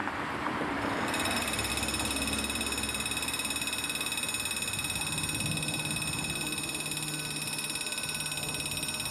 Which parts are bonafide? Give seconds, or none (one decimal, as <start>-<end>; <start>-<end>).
1.7-9.1